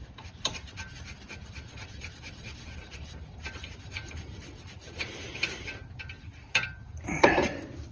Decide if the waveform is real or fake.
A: fake